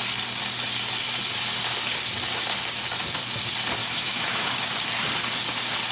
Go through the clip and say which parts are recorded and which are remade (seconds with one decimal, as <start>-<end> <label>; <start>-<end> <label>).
0.0-3.8 recorded; 3.8-4.5 remade; 4.5-5.9 recorded